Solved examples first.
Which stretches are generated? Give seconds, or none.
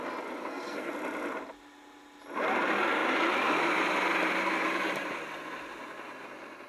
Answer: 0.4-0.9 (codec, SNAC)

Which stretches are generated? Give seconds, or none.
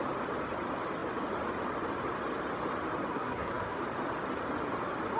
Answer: 3.1-3.8 (codec, SNAC)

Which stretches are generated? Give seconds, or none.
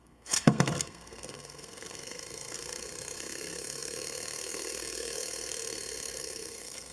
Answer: 0.0-6.9 (codec, SNAC)